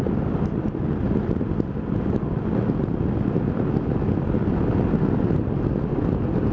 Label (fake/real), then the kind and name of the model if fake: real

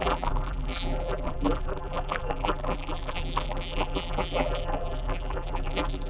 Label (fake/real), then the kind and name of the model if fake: fake, vocoder, BigVGAN v2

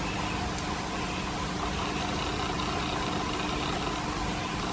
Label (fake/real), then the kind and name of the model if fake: real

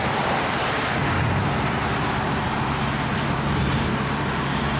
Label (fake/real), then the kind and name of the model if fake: fake, vocoder, BigVGAN v2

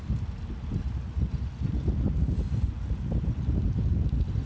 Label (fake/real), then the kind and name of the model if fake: real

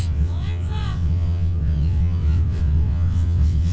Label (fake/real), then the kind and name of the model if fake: fake, vocoder, WaveNeXt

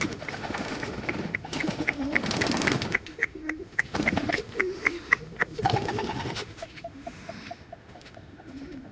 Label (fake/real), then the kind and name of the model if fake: fake, autoencoder, DAC-VAE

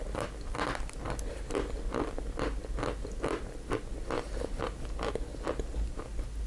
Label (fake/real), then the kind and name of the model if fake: real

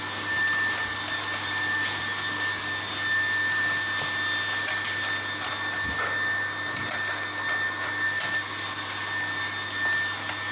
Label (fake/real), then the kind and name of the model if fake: real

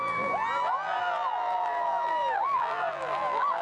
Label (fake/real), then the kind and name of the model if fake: fake, vocoder, BigVGAN v2